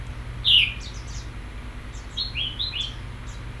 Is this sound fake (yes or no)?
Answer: no